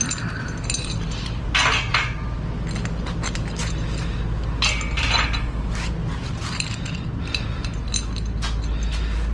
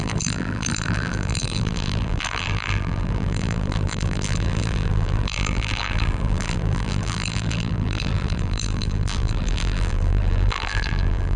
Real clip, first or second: first